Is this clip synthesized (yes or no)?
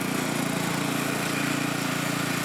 no